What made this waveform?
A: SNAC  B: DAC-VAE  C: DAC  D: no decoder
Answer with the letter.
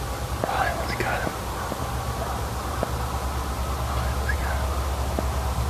D